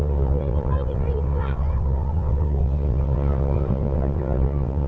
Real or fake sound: fake